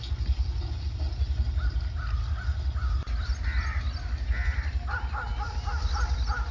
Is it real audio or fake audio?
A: real